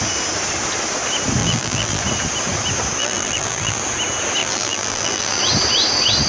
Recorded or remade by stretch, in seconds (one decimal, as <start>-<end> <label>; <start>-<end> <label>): 0.0-1.4 recorded; 1.4-2.0 remade; 2.0-3.0 recorded; 3.0-3.8 remade; 3.8-4.4 recorded; 4.4-5.4 remade; 5.4-6.3 recorded